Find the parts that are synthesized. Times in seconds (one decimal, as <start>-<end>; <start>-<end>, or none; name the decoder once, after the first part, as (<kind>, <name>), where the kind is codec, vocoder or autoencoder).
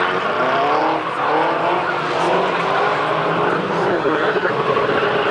3.9-4.5 (codec, SNAC)